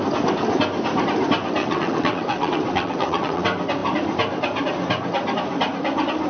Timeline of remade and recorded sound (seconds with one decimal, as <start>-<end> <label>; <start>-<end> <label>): 0.0-1.6 recorded; 1.6-3.4 remade; 3.4-6.3 recorded